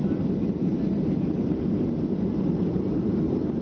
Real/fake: real